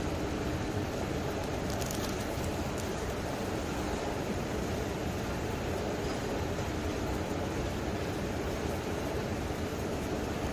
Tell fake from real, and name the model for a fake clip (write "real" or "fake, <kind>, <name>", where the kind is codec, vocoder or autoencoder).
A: fake, vocoder, BigVGAN v2